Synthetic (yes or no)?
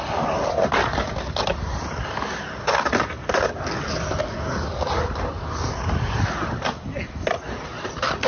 no